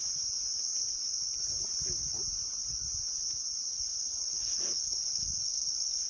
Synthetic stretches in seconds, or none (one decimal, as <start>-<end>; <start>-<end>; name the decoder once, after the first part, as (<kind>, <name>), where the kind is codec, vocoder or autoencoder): 3.7-6.1 (codec, HILCodec)